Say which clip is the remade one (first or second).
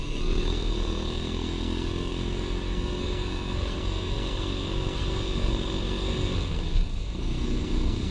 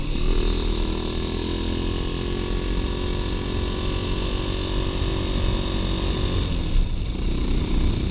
first